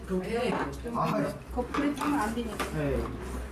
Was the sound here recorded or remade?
recorded